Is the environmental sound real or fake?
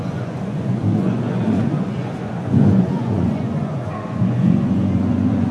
fake